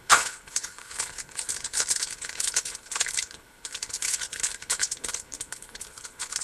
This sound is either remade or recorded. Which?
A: remade